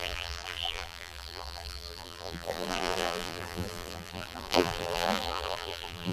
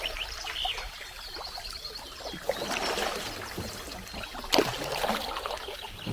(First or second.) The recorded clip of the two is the second